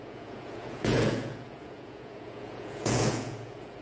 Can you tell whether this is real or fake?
fake